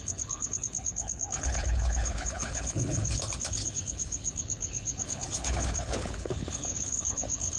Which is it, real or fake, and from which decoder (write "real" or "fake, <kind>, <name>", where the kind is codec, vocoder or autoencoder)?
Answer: fake, codec, HILCodec